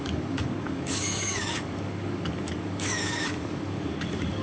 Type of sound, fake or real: fake